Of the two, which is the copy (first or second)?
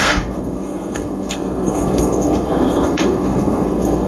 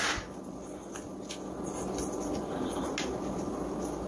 first